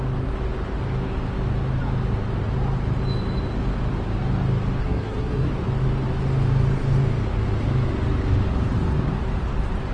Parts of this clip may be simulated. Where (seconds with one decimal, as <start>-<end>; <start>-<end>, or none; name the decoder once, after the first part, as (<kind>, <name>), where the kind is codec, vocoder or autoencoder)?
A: 4.8-5.5 (codec, SNAC)